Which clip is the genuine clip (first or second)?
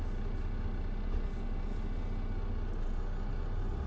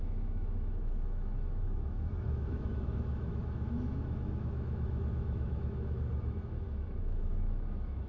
first